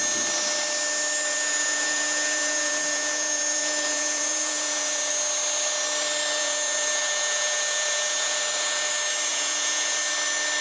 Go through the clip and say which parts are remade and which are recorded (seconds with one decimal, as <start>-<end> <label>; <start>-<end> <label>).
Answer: 0.0-1.3 recorded; 1.3-5.1 remade; 5.1-6.4 recorded; 6.4-8.9 remade; 8.9-9.3 recorded; 9.3-10.0 remade; 10.0-10.6 recorded

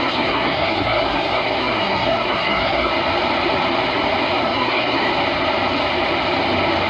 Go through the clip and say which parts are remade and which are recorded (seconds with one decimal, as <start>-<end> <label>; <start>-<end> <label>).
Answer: 0.0-2.9 remade; 2.9-4.4 recorded; 4.4-5.1 remade; 5.1-6.9 recorded

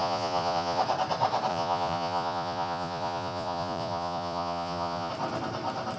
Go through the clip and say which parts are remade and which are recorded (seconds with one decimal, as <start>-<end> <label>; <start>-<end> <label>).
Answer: 0.0-0.8 remade; 0.8-1.5 recorded; 1.5-5.1 remade; 5.1-6.0 recorded